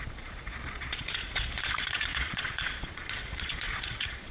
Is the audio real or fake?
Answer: fake